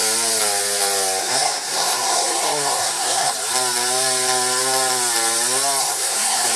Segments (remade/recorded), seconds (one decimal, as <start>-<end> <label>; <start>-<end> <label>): 0.0-1.2 recorded; 1.2-3.3 remade; 3.3-5.8 recorded; 5.8-6.6 remade